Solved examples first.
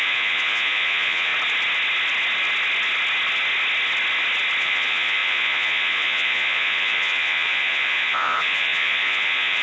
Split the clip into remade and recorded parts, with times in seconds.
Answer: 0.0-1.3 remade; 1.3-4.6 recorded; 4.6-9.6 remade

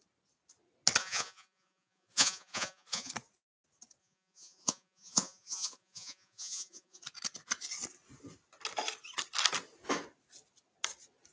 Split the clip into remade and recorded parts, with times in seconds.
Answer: 0.0-1.0 recorded; 1.0-3.1 remade; 3.1-4.0 recorded; 4.0-7.0 remade; 7.0-11.3 recorded

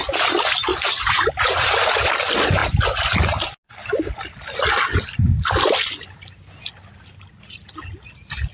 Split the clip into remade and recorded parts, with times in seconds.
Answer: 0.0-0.7 recorded; 0.7-2.1 remade; 2.1-8.5 recorded

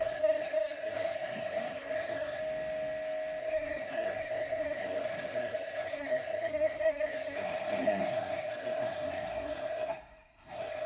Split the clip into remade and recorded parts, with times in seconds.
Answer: 0.0-2.4 remade; 2.4-3.4 recorded; 3.4-10.9 remade

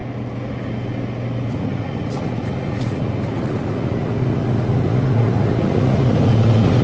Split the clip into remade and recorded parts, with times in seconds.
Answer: 0.0-1.5 recorded; 1.5-6.8 remade

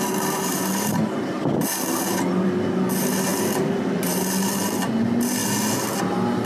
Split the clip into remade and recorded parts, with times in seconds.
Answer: 0.0-6.5 recorded